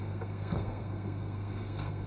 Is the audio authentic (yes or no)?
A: no